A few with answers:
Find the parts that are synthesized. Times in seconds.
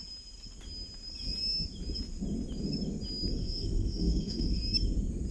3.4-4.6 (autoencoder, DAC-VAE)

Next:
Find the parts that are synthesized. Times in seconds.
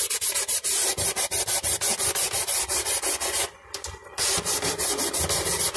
none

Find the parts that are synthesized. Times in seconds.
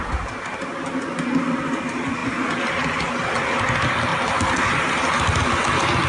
none